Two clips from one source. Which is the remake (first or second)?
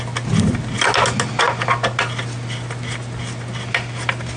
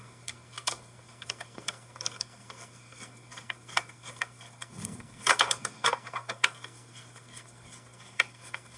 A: second